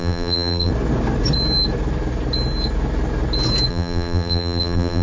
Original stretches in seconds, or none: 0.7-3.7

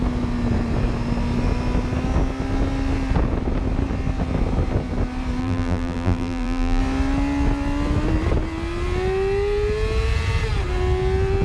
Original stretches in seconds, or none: 0.0-5.4; 6.8-11.4

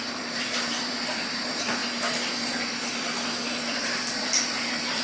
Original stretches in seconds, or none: 1.8-3.7

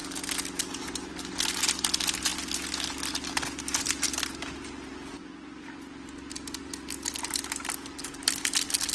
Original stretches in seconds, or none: 0.0-8.9

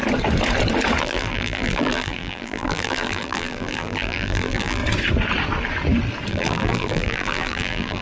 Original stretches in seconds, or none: 0.0-1.0; 4.8-6.3